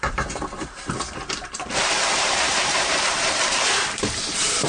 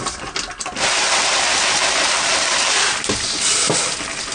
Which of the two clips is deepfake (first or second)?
first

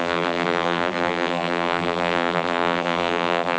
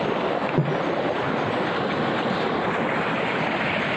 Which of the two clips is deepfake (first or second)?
first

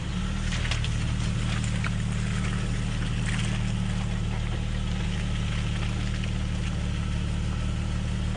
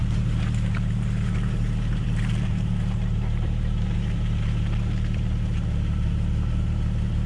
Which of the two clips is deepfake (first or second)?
second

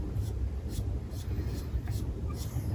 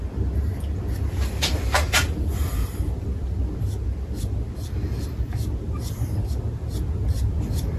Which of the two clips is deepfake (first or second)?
first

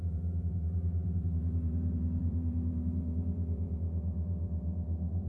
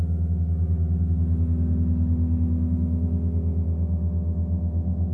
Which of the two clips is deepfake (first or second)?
first